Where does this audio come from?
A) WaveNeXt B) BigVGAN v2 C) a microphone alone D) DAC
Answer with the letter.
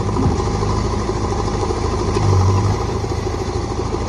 B